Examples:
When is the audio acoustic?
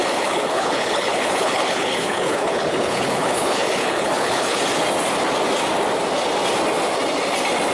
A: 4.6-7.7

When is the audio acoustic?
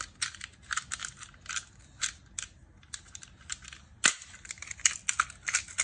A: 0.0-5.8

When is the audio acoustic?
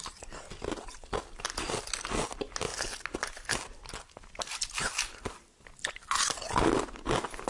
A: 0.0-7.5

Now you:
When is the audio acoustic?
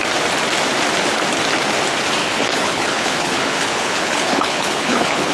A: 0.0-2.2